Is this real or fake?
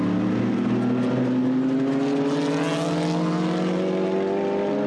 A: real